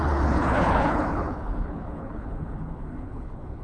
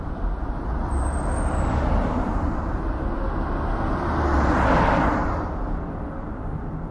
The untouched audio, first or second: second